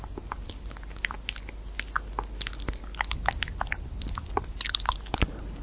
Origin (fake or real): real